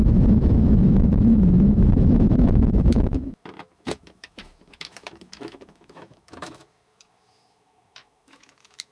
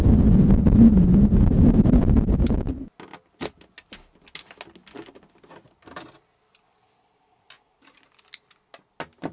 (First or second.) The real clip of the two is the second